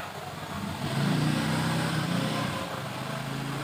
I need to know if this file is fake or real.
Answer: real